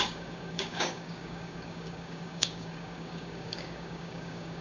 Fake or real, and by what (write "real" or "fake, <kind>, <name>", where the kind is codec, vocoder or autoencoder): fake, codec, DAC